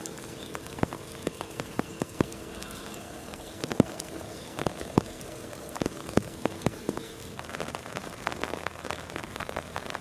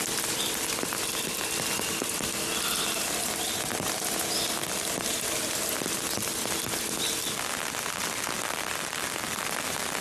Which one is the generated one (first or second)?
first